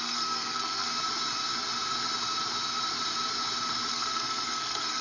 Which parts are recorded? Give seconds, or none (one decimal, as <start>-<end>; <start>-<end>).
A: 0.9-3.9